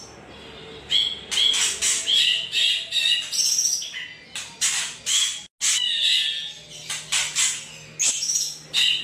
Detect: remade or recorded recorded